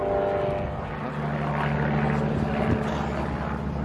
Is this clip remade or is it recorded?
recorded